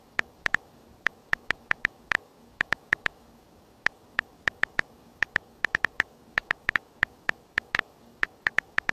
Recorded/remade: remade